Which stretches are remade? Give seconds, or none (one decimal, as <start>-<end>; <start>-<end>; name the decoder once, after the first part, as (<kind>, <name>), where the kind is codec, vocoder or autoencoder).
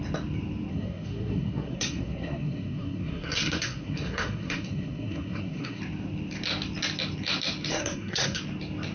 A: 0.7-5.8 (codec, SNAC); 7.7-8.4